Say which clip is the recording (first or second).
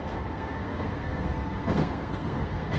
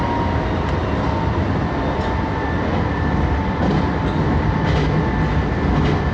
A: second